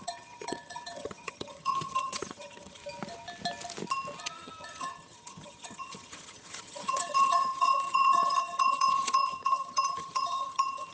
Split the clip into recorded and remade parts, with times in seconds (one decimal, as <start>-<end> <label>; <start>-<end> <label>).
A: 0.0-2.8 remade; 2.8-4.2 recorded; 4.2-10.9 remade